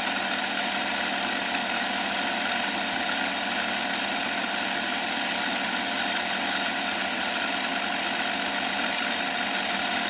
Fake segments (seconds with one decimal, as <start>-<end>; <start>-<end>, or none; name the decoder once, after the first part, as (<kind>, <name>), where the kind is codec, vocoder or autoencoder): none